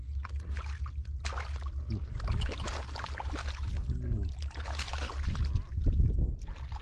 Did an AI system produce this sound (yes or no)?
no